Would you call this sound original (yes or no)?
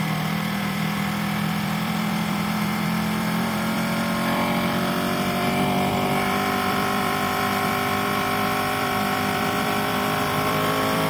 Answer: no